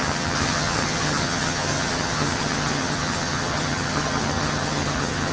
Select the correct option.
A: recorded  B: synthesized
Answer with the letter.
B